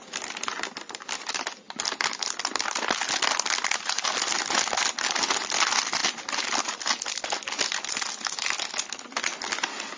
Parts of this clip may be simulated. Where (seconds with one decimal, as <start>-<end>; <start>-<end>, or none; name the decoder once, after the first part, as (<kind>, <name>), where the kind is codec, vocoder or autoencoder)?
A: none